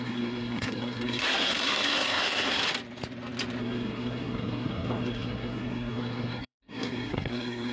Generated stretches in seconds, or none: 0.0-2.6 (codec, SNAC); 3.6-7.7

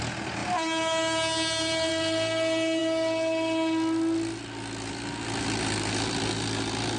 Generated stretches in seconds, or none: none

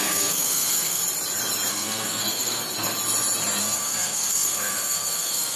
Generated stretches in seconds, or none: 0.0-1.0 (codec, SNAC); 1.7-2.6; 3.6-5.6